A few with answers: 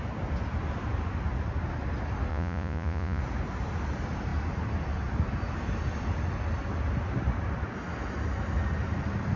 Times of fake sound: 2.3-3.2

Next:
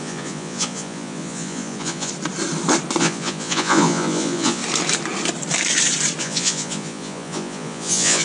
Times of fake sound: 0.0-2.1; 3.0-4.6; 6.2-8.2

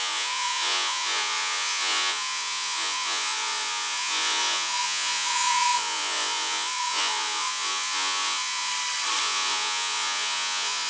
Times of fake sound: 0.0-8.7; 9.2-10.9

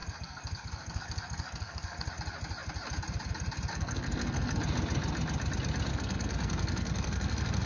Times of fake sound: 0.0-2.1; 3.7-4.6; 5.9-7.7

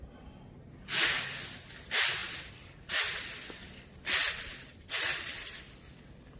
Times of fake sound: none

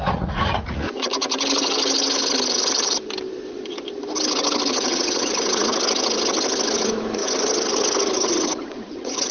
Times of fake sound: 0.0-1.1; 4.7-5.7; 6.8-7.2; 8.3-9.3